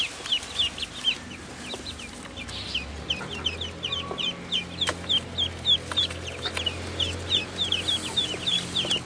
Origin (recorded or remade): recorded